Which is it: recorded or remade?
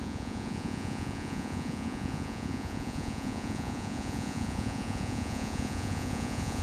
remade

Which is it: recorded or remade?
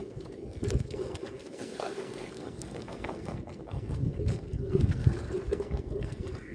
remade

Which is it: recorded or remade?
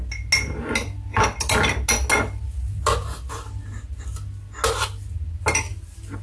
recorded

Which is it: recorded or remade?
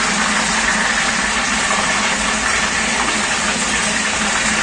recorded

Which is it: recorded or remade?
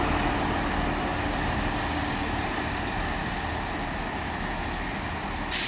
recorded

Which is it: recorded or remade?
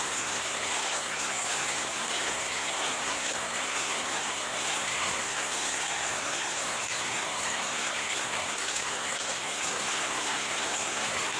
remade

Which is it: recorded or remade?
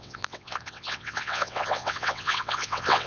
remade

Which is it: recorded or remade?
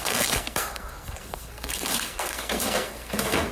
remade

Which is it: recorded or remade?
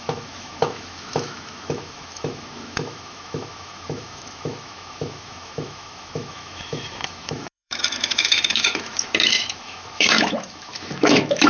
remade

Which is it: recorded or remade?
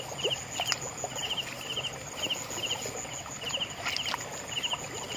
recorded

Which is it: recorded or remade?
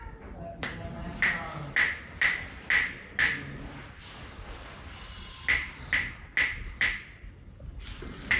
recorded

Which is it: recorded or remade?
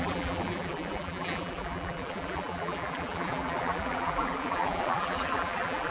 remade